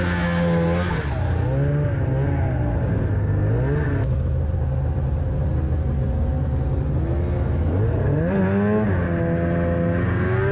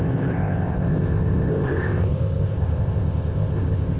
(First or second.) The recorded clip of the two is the first